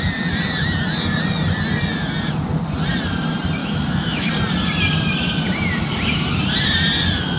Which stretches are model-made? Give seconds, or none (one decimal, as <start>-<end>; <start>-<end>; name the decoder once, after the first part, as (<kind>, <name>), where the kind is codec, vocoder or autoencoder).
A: 3.6-4.3 (autoencoder, DAC-VAE)